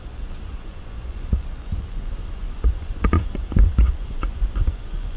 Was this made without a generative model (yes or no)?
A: no